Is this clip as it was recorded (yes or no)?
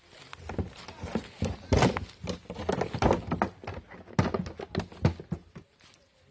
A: yes